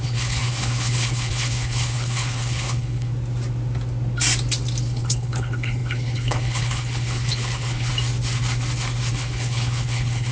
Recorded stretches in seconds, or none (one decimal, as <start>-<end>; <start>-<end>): 3.1-4.8; 7.9-9.1